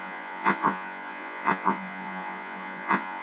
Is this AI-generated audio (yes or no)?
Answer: yes